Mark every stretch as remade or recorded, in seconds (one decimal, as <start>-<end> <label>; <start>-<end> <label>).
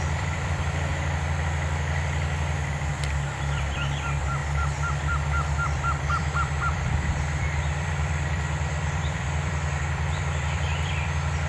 0.0-0.9 remade; 0.9-2.9 recorded; 2.9-11.5 remade